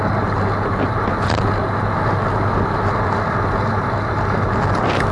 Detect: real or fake real